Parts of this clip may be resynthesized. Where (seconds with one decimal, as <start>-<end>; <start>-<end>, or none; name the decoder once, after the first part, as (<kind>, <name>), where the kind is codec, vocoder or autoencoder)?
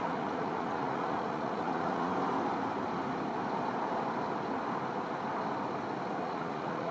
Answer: 0.0-2.1 (vocoder, Vocos); 6.2-6.9